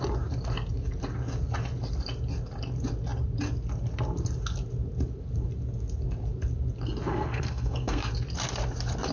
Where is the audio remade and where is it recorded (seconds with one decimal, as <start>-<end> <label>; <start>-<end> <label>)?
0.0-7.1 recorded; 7.1-8.1 remade; 8.1-9.1 recorded